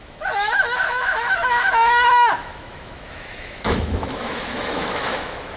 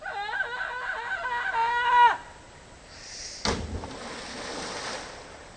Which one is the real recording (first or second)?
second